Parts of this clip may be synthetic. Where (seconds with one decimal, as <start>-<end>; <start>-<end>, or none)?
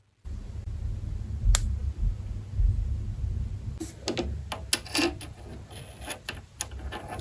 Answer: none